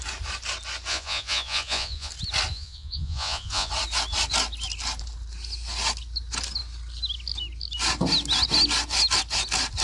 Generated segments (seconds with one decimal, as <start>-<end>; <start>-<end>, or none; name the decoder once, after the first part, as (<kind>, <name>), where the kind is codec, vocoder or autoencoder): 0.9-2.1 (vocoder, Vocos); 2.5-3.7